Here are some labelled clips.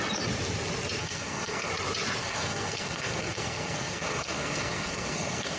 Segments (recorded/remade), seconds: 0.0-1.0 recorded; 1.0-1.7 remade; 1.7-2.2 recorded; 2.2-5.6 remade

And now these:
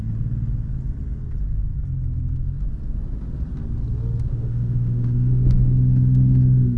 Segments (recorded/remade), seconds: 0.0-4.3 recorded; 4.3-6.8 remade

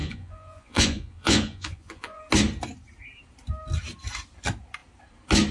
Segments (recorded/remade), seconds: 0.0-2.2 remade; 2.2-5.5 recorded

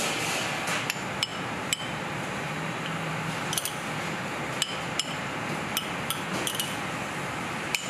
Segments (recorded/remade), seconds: 0.0-7.9 recorded

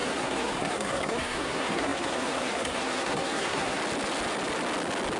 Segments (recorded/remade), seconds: 0.0-3.8 remade; 3.8-5.2 recorded

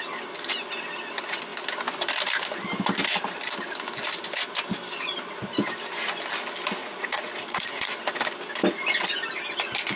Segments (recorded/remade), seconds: 0.0-6.8 recorded; 6.8-7.9 remade; 7.9-10.0 recorded